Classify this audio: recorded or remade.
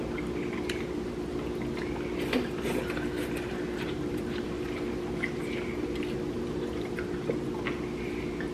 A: recorded